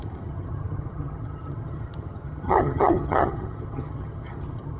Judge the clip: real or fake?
fake